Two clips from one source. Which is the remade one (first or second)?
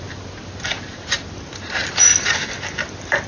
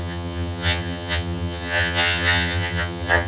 second